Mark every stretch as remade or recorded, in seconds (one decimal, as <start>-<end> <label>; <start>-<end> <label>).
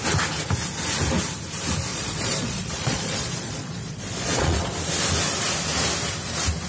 0.0-1.9 recorded; 1.9-4.7 remade; 4.7-6.7 recorded